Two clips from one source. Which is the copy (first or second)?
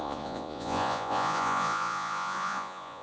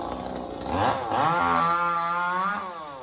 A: first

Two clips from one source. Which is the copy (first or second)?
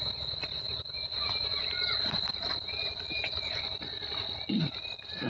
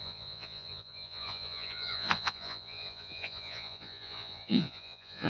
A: second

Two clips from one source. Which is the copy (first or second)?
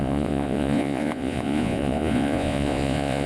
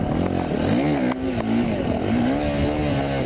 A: first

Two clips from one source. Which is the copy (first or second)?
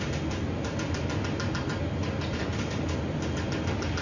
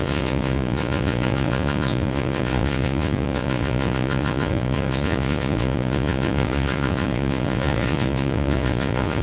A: second